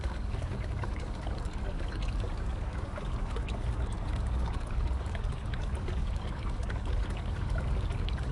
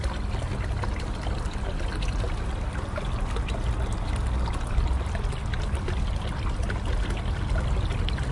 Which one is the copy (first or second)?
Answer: first